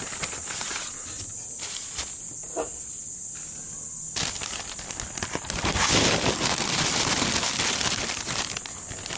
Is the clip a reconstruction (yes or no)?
no